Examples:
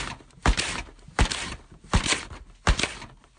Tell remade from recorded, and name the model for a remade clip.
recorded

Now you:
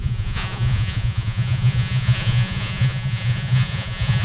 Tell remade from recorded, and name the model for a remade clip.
remade, vocoder, Vocos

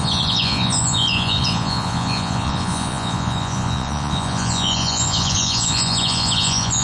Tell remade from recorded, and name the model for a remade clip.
remade, vocoder, Vocos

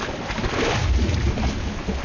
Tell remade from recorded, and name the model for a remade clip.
recorded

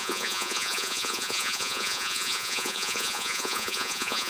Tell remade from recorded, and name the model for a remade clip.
remade, vocoder, Vocos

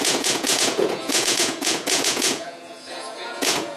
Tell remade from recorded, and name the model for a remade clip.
remade, vocoder, Vocos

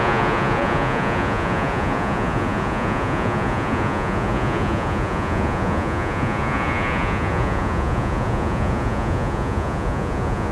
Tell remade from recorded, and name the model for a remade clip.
remade, vocoder, Vocos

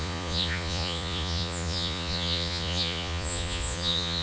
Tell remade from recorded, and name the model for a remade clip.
remade, vocoder, Vocos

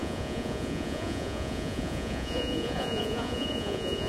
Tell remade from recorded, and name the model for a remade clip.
remade, vocoder, Vocos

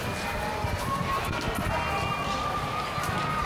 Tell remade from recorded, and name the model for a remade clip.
recorded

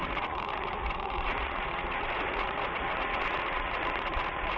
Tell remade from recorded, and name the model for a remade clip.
remade, vocoder, Vocos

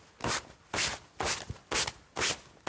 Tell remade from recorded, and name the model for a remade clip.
recorded